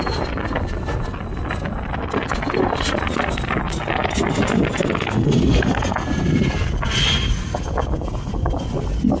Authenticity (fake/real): real